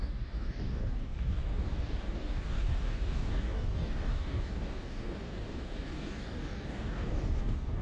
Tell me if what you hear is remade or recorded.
remade